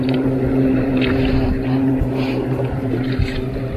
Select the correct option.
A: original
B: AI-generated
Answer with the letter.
B